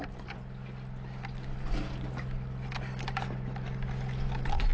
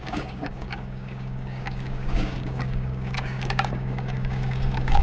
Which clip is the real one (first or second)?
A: first